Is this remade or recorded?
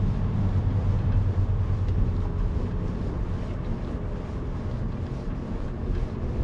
recorded